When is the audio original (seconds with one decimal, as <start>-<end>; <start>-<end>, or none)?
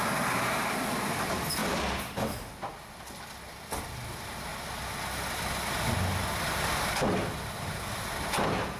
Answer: 1.6-3.7; 4.5-8.3